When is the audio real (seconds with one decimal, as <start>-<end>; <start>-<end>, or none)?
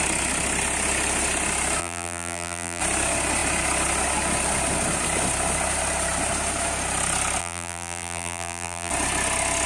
0.0-1.8; 2.8-7.4; 8.9-9.7